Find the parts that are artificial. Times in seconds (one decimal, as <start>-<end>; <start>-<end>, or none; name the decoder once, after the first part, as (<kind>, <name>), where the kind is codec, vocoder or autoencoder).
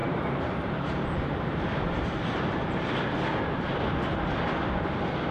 0.0-1.6 (vocoder, BigVGAN v2)